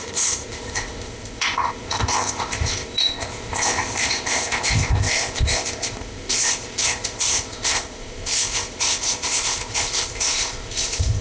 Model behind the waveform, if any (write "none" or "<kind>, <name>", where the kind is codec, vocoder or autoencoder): codec, ZipCodec